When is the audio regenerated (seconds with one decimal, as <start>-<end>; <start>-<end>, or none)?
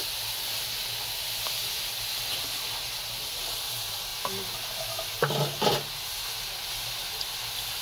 none